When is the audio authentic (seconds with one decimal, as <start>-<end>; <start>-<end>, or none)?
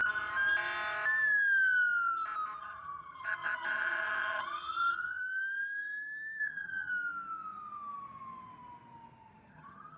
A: 0.0-2.6; 5.2-6.4; 6.9-9.5